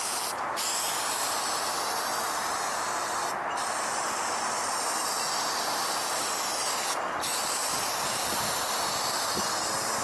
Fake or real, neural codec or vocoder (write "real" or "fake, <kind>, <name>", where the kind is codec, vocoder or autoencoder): real